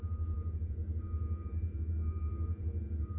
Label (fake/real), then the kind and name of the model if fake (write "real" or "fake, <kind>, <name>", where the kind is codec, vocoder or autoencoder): fake, vocoder, Vocos